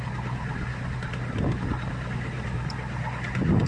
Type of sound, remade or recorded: recorded